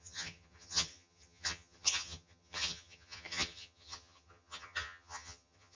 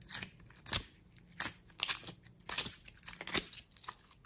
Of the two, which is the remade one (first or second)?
first